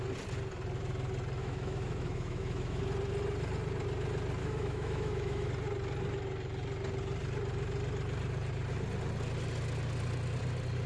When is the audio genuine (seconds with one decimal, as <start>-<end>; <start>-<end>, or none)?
0.0-1.4; 2.8-4.4; 5.5-10.9

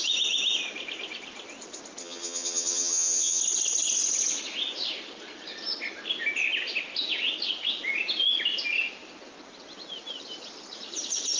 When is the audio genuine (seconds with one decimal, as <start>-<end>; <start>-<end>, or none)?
0.0-2.0; 3.4-11.4

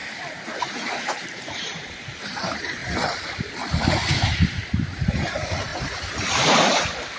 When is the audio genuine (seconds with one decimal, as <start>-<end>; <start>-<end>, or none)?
0.0-0.6; 2.8-4.1

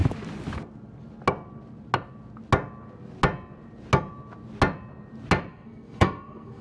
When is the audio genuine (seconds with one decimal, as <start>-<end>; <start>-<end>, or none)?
0.0-5.5

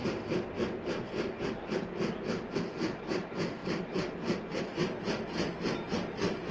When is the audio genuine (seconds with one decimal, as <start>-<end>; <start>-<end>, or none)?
0.0-6.5

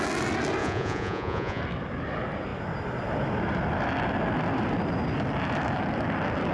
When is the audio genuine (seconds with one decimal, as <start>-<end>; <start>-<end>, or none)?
0.0-0.6; 1.6-6.5

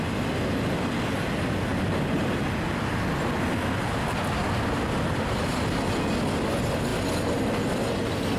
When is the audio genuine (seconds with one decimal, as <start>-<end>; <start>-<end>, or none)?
0.0-8.4

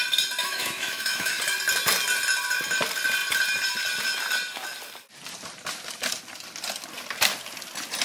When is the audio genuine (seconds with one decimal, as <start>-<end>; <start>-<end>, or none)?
0.0-0.4; 1.4-8.0